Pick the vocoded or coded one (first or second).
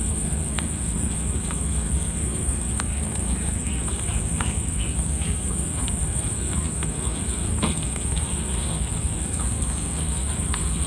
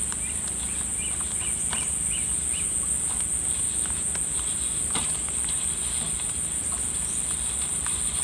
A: first